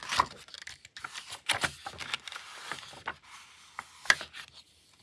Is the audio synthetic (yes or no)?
no